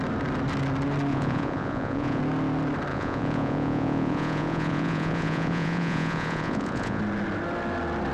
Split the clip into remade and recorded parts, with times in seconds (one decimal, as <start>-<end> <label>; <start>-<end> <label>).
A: 0.0-1.1 recorded; 1.1-2.2 remade; 2.2-2.9 recorded; 2.9-7.0 remade; 7.0-8.1 recorded